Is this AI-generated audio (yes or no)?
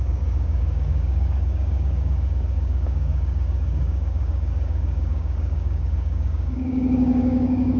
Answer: yes